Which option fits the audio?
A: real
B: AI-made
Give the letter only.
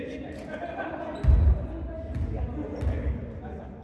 A